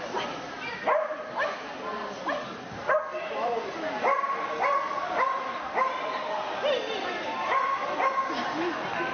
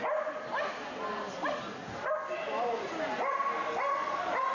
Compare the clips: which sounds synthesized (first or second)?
first